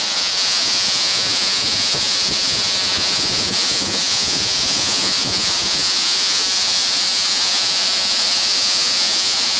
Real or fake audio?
fake